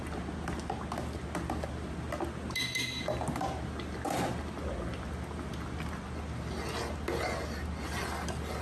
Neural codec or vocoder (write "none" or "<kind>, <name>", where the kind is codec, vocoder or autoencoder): none